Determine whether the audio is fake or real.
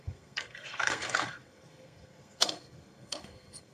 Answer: fake